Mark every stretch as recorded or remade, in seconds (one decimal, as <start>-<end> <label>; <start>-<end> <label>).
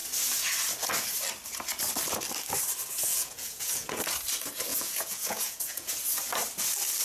0.0-3.1 recorded; 3.1-4.0 remade; 4.0-4.7 recorded; 4.7-5.9 remade; 5.9-7.0 recorded